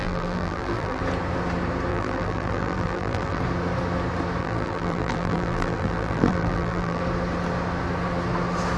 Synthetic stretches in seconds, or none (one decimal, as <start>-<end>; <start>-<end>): 0.0-1.0; 1.9-3.4; 4.4-7.0